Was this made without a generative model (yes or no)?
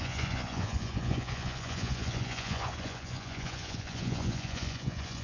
no